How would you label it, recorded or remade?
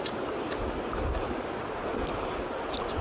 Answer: recorded